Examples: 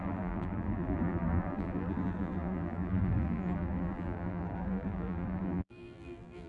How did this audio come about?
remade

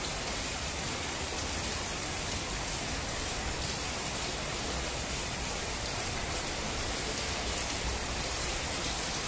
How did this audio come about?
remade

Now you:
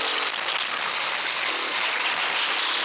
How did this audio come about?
recorded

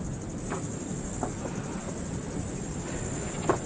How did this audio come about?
recorded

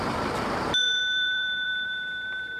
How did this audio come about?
remade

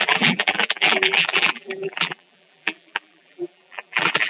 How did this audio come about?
remade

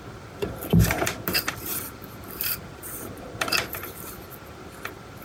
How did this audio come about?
remade